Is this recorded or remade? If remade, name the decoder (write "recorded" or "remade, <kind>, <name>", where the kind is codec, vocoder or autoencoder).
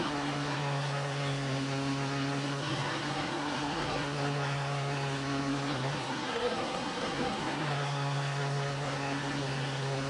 remade, codec, SNAC